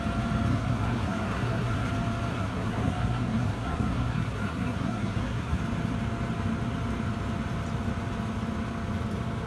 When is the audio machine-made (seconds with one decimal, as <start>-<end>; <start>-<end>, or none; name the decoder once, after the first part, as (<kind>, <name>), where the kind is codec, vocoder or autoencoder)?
0.5-1.9 (codec, SNAC); 2.3-5.6